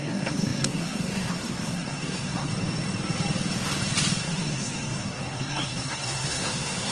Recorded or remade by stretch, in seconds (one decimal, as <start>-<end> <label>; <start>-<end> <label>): 0.0-2.5 remade; 2.5-4.2 recorded; 4.2-6.9 remade